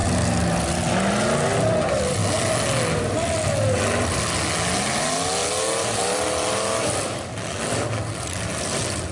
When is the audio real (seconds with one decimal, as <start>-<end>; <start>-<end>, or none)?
0.0-9.1